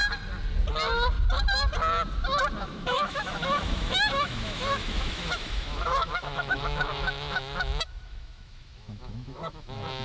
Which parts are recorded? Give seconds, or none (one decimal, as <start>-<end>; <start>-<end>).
0.0-2.6